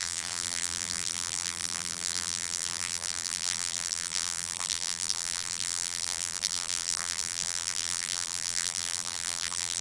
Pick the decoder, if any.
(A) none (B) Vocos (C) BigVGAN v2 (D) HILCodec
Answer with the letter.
C